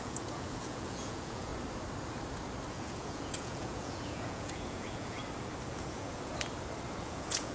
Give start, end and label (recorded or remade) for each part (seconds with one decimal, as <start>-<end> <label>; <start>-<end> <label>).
0.0-1.5 remade; 1.5-2.7 recorded; 2.7-5.2 remade; 5.2-5.7 recorded; 5.7-6.3 remade; 6.3-7.0 recorded; 7.0-7.5 remade